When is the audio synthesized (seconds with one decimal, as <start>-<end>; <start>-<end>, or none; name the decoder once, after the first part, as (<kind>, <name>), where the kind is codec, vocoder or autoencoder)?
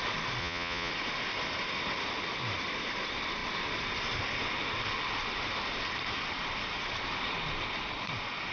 0.4-0.9 (vocoder, Vocos)